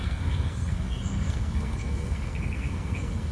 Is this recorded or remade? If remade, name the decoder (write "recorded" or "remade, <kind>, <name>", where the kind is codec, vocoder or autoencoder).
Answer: remade, codec, SNAC